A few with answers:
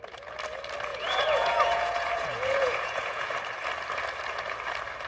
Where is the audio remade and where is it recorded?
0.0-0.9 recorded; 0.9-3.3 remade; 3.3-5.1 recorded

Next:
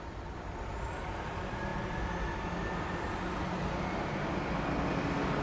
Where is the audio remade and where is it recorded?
0.0-5.4 recorded